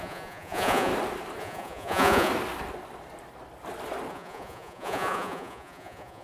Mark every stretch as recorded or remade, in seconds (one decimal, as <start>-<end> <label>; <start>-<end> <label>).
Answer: 0.0-0.9 remade; 0.9-1.4 recorded; 1.4-2.3 remade; 2.3-4.1 recorded; 4.1-6.2 remade

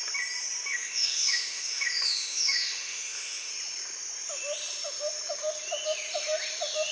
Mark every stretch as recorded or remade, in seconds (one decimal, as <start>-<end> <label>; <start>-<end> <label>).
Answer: 0.0-0.7 recorded; 0.7-3.5 remade; 3.5-6.9 recorded

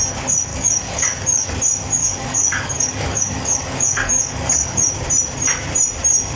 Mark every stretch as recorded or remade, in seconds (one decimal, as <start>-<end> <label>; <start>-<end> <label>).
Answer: 0.0-0.5 recorded; 0.5-1.5 remade; 1.5-2.0 recorded; 2.0-4.8 remade; 4.8-6.4 recorded

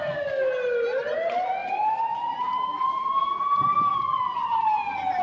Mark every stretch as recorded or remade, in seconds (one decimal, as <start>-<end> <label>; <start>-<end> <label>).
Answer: 0.0-5.2 recorded

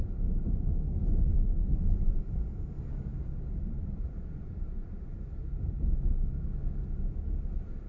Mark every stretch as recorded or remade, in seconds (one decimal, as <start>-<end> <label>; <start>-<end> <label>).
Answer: 0.0-1.6 recorded; 1.6-2.3 remade; 2.3-3.1 recorded; 3.1-5.6 remade; 5.6-7.9 recorded

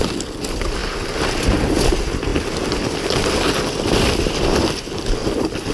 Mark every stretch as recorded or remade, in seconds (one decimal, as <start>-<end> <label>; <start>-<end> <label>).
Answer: 0.0-5.7 recorded